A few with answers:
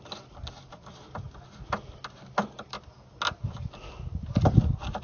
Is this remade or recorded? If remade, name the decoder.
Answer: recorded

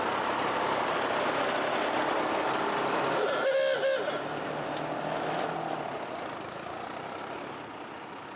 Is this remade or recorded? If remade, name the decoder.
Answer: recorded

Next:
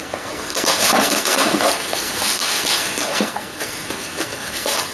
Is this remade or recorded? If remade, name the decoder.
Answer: remade, codec, SNAC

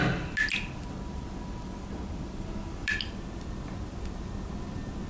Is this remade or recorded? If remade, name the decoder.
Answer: recorded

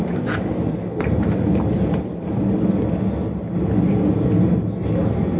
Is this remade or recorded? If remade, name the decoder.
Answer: recorded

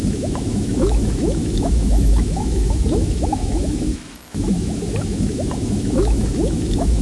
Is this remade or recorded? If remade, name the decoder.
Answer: remade, autoencoder, DAC-VAE